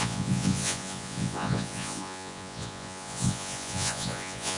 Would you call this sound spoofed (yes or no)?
yes